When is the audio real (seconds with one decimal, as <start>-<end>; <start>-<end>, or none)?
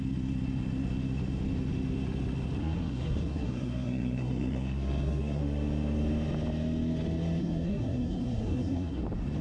0.0-2.6; 5.4-7.4; 9.0-9.4